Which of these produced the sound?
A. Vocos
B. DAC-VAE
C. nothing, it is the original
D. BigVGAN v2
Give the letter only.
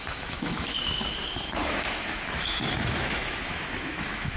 B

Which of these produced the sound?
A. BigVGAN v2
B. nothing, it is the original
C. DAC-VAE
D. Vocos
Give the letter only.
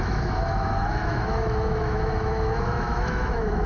C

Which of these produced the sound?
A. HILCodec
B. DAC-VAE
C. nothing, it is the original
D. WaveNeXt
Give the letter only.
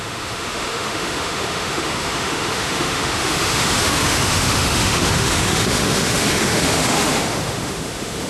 B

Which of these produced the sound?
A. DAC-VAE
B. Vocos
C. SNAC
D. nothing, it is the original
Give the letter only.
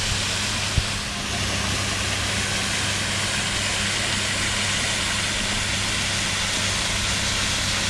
D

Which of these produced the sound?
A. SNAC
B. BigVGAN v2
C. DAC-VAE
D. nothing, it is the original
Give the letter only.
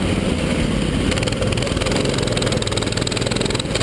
D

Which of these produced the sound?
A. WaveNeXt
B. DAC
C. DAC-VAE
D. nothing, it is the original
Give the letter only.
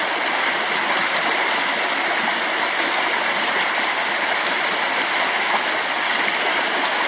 D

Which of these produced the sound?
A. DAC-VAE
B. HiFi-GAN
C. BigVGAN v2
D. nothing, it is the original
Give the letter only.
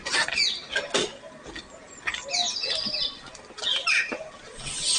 D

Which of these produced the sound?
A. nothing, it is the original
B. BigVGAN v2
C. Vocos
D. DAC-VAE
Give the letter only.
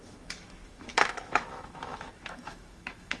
D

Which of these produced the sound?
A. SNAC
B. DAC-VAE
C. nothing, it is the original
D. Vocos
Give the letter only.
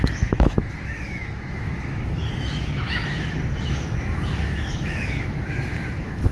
B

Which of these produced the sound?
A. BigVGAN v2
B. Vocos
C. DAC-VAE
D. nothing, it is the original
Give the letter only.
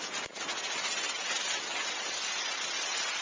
D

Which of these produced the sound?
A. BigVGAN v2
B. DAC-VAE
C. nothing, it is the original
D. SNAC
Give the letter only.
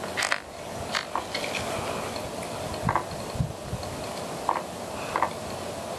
C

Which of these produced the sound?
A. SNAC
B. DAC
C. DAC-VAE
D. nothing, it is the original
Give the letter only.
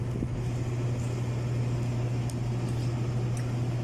D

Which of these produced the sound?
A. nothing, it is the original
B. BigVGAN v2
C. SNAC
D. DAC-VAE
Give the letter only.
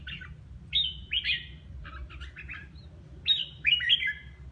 A